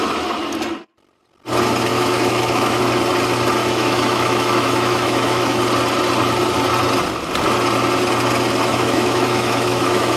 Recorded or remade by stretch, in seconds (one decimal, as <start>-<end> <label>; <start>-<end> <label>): 0.0-1.9 recorded; 1.9-2.8 remade; 2.8-3.6 recorded; 3.6-5.6 remade; 5.6-8.7 recorded; 8.7-10.2 remade